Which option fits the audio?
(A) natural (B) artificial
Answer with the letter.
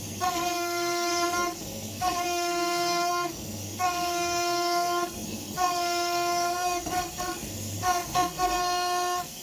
B